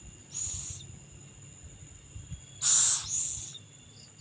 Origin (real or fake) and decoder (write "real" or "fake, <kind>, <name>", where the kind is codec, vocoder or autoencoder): real